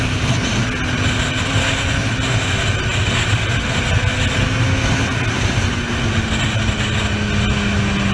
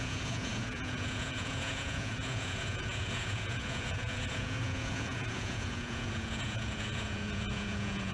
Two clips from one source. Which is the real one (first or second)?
first